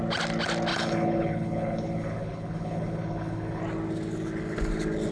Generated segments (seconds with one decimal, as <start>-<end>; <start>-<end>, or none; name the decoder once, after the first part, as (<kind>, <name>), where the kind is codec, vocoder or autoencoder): 0.7-3.6 (codec, HILCodec)